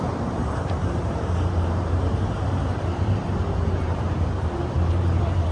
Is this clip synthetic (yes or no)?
yes